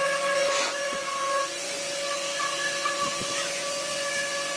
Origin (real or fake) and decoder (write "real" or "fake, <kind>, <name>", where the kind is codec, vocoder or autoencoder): fake, vocoder, Vocos